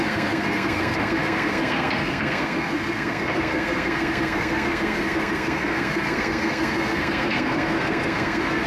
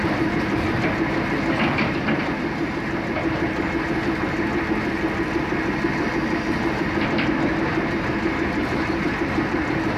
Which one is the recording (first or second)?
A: second